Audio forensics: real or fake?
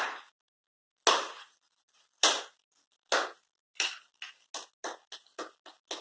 real